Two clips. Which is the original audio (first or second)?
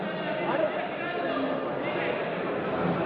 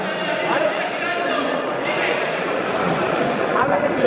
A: first